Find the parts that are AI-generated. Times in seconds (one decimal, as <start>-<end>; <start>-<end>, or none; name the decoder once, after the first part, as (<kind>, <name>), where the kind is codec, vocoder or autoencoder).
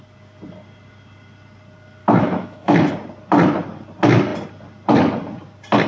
2.0-2.9 (autoencoder, DAC-VAE)